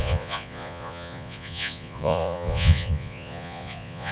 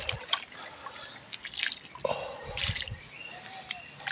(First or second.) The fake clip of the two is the first